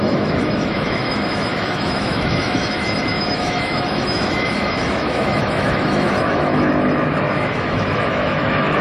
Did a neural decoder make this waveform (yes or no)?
yes